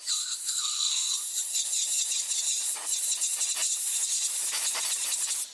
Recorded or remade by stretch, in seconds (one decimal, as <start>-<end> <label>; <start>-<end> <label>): 0.0-0.4 recorded; 0.4-1.1 remade; 1.1-5.5 recorded